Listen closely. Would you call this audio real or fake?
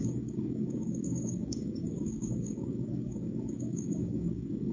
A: fake